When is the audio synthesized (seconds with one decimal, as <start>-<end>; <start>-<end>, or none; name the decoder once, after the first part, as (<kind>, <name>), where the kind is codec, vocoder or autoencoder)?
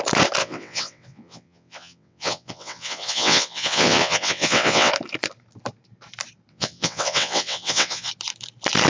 0.4-4.9 (vocoder, WaveNeXt); 6.5-8.1